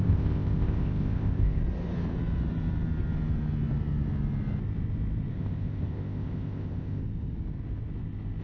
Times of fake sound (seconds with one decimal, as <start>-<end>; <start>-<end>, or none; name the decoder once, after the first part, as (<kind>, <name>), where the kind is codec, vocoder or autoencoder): 0.0-1.6 (codec, ZipCodec); 5.3-7.0